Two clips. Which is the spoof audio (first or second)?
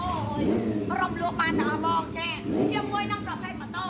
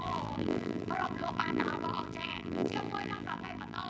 second